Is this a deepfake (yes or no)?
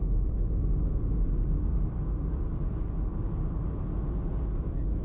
no